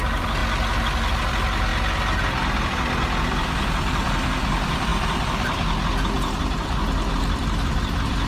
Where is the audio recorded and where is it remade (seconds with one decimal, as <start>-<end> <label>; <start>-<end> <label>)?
0.0-0.4 remade; 0.4-1.2 recorded; 1.2-1.7 remade; 1.7-2.6 recorded; 2.6-8.3 remade